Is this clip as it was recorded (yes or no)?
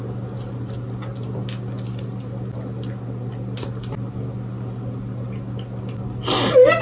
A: yes